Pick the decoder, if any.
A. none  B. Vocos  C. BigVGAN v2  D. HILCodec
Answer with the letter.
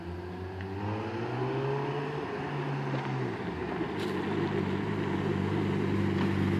A